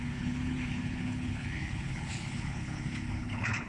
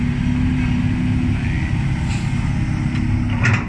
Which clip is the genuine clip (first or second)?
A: second